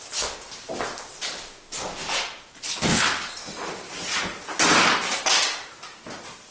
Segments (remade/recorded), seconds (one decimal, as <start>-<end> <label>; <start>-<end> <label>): 0.0-6.5 recorded